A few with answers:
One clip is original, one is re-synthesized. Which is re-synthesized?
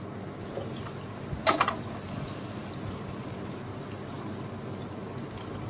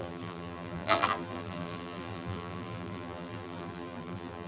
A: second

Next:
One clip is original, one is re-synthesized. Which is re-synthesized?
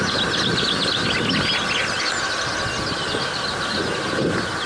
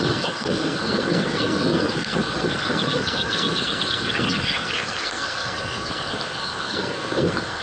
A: second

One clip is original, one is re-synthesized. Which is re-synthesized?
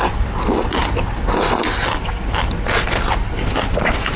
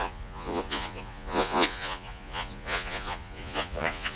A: second